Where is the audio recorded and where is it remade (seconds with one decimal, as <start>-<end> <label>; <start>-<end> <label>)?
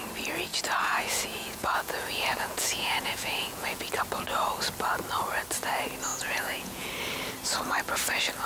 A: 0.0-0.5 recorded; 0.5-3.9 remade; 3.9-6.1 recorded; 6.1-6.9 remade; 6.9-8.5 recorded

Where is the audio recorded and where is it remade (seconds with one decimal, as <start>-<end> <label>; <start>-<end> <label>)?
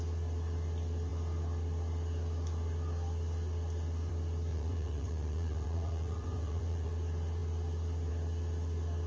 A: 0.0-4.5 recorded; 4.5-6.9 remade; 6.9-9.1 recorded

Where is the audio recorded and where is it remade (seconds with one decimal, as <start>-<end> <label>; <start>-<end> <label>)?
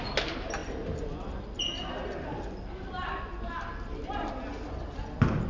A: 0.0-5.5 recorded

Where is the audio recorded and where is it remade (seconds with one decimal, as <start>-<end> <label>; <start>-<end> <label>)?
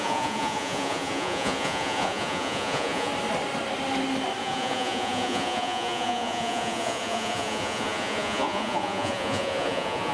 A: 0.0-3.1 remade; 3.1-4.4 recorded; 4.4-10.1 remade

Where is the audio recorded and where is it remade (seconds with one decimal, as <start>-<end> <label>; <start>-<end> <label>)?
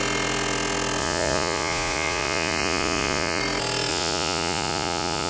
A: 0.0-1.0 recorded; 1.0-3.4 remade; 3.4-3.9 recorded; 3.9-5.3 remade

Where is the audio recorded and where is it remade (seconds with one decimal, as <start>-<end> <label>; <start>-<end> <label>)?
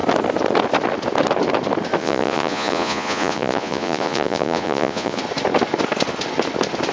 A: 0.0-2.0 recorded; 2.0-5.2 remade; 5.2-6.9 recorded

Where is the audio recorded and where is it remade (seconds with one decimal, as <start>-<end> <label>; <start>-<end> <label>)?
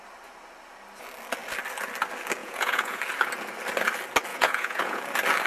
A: 0.0-2.4 recorded; 2.4-3.0 remade; 3.0-4.3 recorded; 4.3-5.0 remade; 5.0-5.5 recorded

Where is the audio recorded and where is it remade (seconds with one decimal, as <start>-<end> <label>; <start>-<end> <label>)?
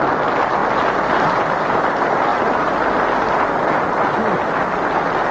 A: 0.0-5.3 recorded